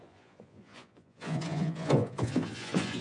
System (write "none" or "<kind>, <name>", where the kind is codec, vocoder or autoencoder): vocoder, Vocos